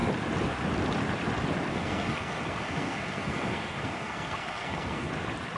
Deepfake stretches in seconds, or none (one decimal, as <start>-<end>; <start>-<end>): 1.7-5.1

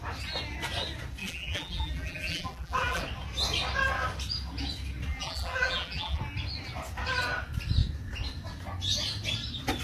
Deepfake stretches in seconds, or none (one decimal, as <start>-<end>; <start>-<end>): 1.2-3.0; 5.1-6.2

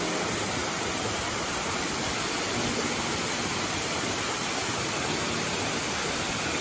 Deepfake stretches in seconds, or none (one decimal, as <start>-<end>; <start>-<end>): none

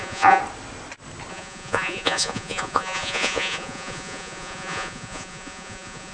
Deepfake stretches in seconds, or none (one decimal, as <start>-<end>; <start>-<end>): 0.0-0.4; 1.3-6.1

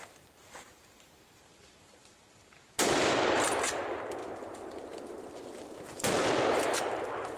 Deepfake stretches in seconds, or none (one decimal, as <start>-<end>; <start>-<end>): 0.0-2.0; 2.9-4.2; 6.2-7.4

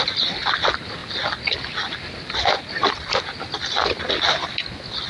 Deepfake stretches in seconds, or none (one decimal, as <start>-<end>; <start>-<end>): none

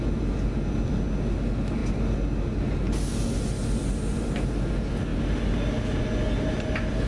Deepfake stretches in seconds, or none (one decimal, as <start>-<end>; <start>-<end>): none

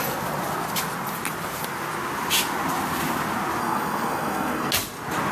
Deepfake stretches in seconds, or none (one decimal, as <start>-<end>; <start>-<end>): 3.6-4.7